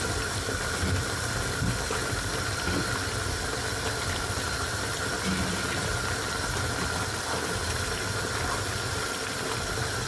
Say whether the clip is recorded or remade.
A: recorded